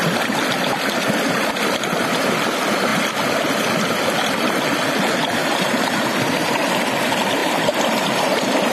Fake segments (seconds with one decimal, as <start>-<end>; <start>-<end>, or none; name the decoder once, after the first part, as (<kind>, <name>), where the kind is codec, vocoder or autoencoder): 5.4-6.0 (vocoder, BigVGAN v2); 7.4-8.7